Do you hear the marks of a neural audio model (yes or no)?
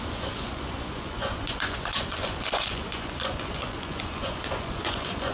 yes